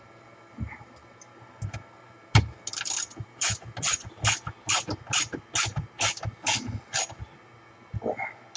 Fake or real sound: real